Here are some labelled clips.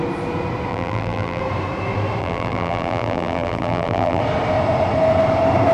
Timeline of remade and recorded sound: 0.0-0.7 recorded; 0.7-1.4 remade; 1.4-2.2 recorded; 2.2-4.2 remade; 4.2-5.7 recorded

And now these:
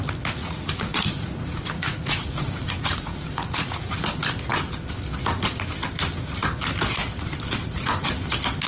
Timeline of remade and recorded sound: 0.0-0.4 recorded; 0.4-3.9 remade; 3.9-7.6 recorded; 7.6-8.1 remade; 8.1-8.7 recorded

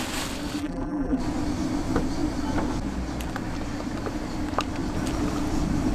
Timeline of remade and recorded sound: 0.0-0.6 recorded; 0.6-1.2 remade; 1.2-5.9 recorded

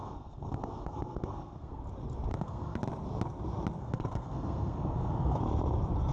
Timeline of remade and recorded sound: 0.0-1.8 remade; 1.8-2.3 recorded; 2.3-2.8 remade; 2.8-3.8 recorded; 3.8-5.4 remade; 5.4-6.1 recorded